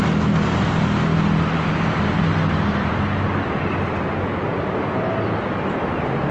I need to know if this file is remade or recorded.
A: recorded